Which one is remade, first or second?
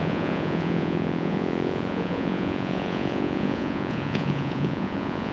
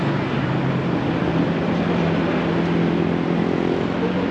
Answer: first